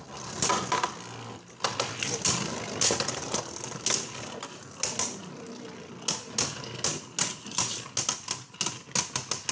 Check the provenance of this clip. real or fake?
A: real